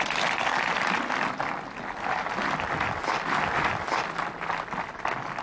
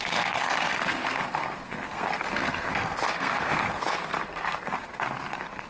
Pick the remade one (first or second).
second